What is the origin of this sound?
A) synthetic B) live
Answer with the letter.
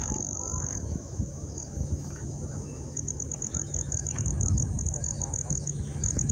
A